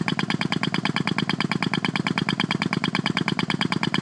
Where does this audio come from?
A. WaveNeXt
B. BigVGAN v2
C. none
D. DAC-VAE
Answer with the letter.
C